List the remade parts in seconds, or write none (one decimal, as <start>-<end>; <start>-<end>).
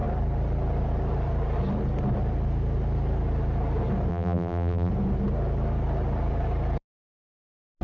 4.1-4.9